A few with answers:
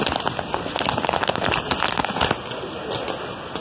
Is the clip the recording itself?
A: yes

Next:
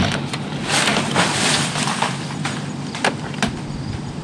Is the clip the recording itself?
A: no